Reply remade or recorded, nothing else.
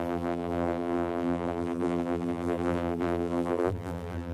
remade